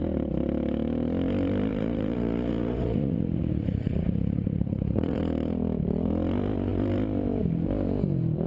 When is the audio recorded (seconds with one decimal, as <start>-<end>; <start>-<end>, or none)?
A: 0.0-1.7; 5.2-8.5